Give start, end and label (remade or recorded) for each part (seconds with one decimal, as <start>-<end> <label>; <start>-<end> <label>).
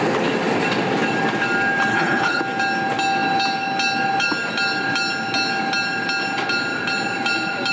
0.0-1.9 recorded; 1.9-2.4 remade; 2.4-7.7 recorded